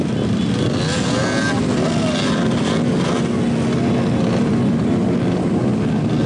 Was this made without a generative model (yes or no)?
yes